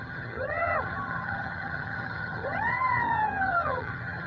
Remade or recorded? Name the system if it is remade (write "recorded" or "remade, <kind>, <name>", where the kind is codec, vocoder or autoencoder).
remade, vocoder, HiFi-GAN